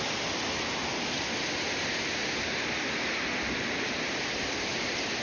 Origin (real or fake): real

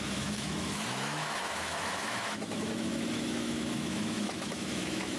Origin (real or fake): fake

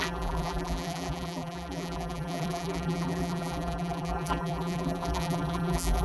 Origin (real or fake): fake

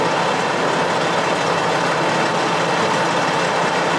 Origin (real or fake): real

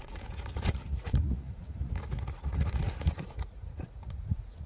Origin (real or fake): fake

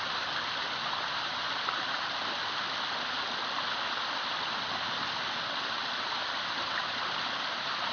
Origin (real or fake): real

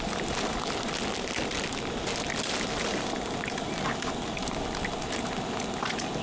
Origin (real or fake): real